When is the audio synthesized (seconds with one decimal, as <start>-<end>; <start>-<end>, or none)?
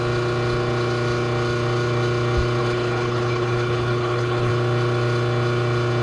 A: 2.6-4.5